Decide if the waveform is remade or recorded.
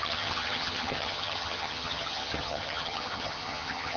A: remade